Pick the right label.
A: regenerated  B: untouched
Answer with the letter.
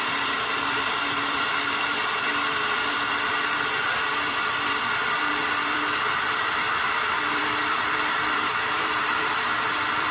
A